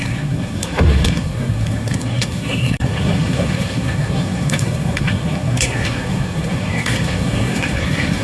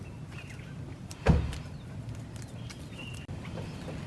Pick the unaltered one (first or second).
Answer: second